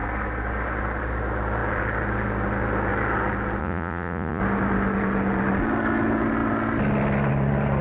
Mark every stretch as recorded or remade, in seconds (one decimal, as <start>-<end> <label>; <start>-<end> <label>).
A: 0.0-3.6 recorded; 3.6-4.4 remade; 4.4-7.8 recorded